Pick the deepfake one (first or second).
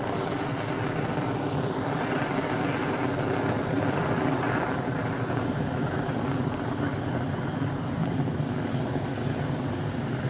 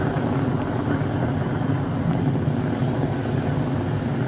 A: first